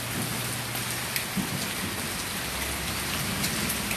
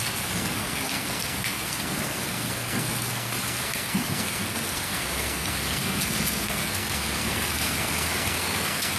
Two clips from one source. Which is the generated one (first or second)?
second